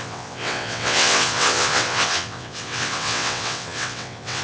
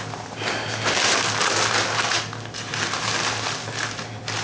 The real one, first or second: second